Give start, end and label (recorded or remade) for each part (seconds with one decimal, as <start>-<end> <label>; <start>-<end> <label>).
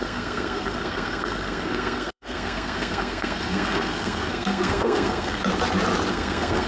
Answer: 0.0-5.4 remade; 5.4-6.1 recorded; 6.1-6.7 remade